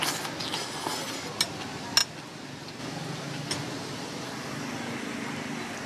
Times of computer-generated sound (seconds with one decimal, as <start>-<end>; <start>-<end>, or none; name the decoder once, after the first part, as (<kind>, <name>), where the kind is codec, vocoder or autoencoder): none